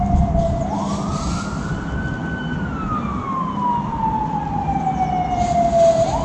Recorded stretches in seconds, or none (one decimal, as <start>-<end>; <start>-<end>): 0.0-6.2